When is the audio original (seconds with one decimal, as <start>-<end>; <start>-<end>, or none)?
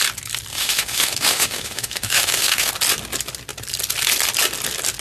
0.0-0.5; 2.7-5.0